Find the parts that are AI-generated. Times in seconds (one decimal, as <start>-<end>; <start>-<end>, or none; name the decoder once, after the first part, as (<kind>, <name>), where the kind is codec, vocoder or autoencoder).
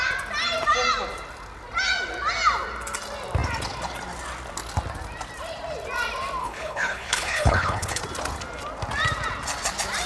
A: 6.4-8.0 (codec, HILCodec)